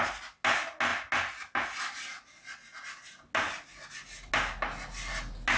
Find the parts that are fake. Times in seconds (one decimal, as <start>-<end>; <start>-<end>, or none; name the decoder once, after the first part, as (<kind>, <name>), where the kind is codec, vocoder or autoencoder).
none